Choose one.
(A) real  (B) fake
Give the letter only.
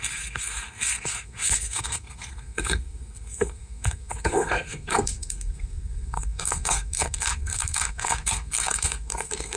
B